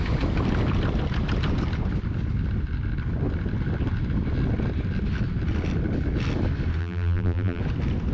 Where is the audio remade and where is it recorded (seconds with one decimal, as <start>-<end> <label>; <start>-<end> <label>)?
0.0-6.8 recorded; 6.8-7.6 remade; 7.6-8.1 recorded